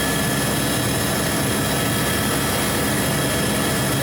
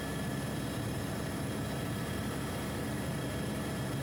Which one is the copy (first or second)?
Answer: second